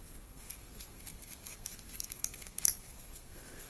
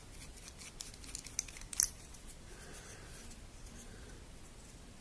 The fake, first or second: first